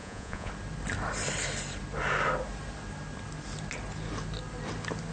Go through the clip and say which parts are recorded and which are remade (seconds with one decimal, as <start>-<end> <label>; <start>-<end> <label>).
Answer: 0.0-0.5 remade; 0.5-5.1 recorded